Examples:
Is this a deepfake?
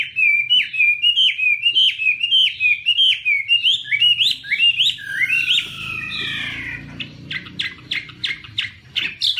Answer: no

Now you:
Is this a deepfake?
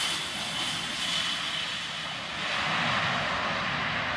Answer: no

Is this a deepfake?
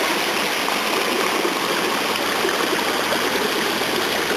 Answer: no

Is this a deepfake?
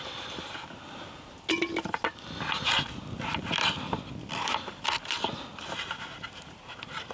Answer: no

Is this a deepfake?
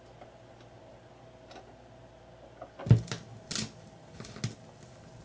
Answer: no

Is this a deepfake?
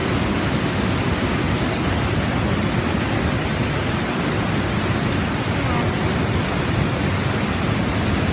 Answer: no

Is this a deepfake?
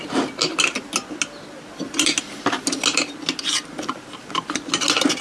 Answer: no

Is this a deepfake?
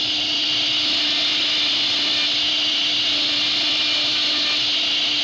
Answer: no